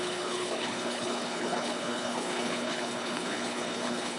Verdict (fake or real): fake